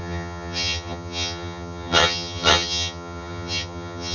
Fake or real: fake